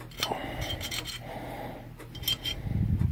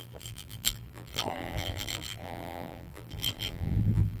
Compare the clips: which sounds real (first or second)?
first